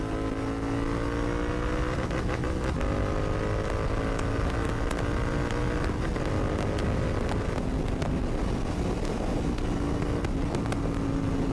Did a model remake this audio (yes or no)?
no